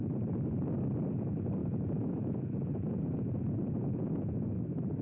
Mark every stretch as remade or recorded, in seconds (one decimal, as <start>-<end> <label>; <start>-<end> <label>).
0.0-1.6 recorded; 1.6-4.6 remade; 4.6-5.0 recorded